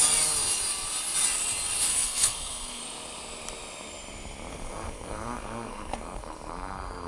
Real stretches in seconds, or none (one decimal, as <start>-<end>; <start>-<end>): 0.0-1.9; 2.8-4.5